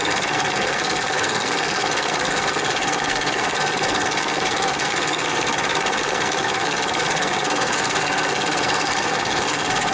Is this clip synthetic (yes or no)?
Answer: yes